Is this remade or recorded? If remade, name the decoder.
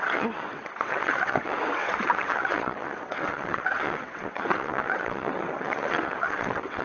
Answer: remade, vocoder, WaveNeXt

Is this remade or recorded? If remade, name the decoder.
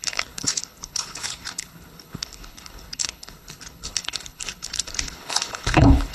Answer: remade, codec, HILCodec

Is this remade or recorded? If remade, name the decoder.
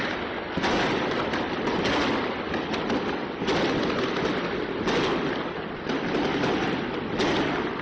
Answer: recorded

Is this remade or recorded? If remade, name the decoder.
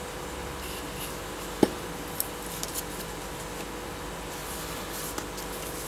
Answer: recorded